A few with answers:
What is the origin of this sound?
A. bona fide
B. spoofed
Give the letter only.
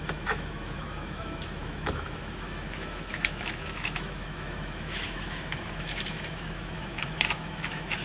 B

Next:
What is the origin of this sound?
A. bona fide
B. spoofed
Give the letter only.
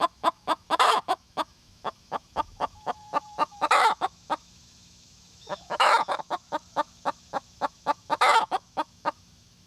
B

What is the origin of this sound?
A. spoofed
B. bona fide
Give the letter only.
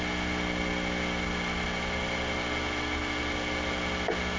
B